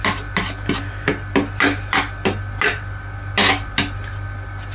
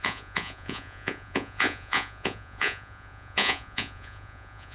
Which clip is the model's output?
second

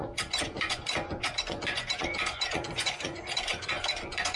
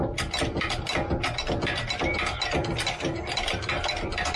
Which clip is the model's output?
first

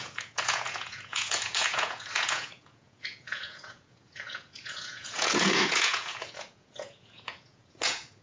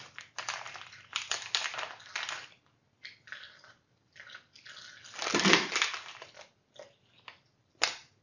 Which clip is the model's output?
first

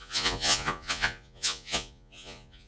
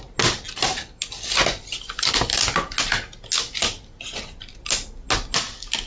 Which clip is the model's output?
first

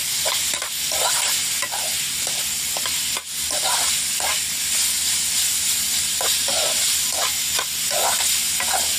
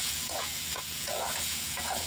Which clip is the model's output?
second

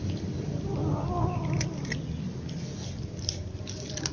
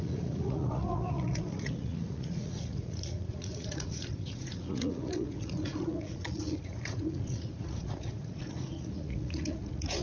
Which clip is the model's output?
second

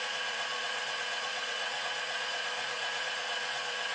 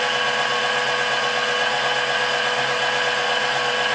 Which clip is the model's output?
first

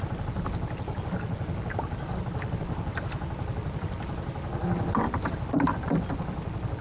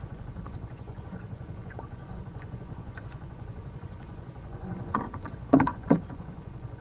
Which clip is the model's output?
second